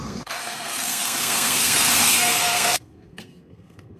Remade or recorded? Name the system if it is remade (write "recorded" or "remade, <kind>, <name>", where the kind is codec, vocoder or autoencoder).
remade, codec, SNAC